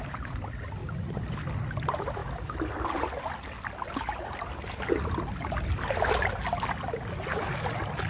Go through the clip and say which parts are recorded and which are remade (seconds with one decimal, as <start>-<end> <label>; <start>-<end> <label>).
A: 0.0-8.1 recorded